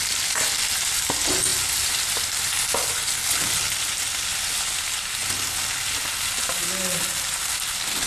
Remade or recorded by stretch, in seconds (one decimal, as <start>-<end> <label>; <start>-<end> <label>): 0.0-8.1 recorded